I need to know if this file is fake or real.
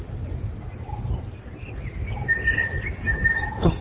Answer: real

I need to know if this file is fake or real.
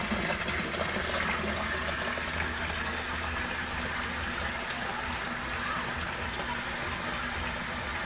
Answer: real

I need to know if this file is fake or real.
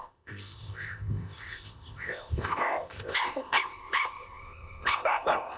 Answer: fake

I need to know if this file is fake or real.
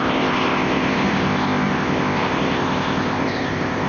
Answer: fake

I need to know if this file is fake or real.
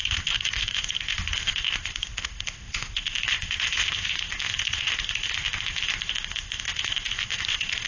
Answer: fake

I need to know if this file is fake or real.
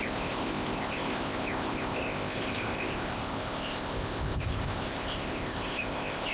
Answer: fake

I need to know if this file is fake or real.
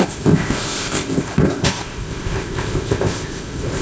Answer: fake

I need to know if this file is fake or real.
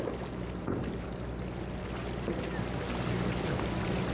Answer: real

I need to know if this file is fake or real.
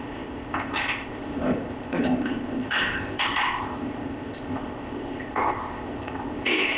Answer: fake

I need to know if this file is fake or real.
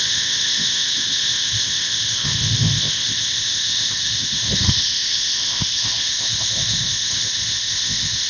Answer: fake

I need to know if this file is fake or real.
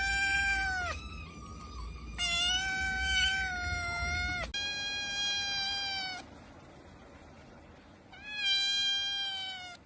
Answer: real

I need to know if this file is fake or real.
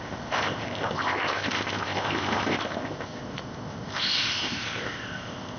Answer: fake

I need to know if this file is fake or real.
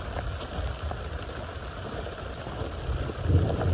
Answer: real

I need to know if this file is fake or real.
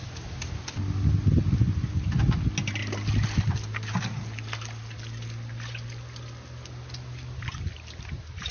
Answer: real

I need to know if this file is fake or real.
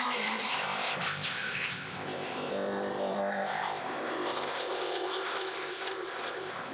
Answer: fake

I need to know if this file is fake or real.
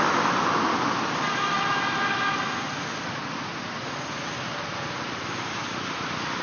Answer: real